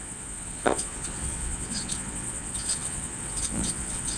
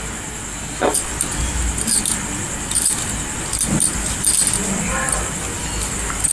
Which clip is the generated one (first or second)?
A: first